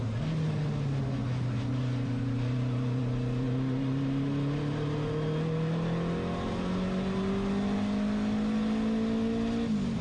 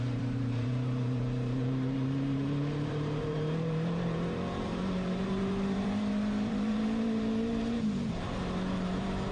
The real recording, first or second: first